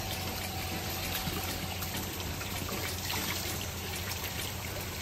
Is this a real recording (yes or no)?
no